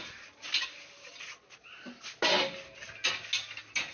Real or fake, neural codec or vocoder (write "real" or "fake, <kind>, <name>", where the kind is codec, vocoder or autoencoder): real